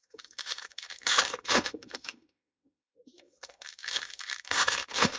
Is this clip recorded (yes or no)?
no